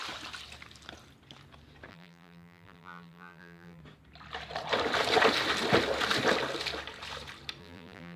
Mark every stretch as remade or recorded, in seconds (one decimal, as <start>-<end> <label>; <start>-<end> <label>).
0.0-1.9 recorded; 1.9-3.8 remade; 3.8-7.6 recorded; 7.6-8.2 remade